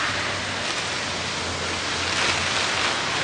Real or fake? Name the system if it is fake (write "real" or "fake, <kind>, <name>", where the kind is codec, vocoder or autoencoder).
real